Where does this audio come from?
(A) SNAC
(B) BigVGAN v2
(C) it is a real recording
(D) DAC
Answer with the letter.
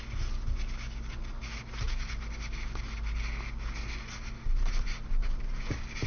C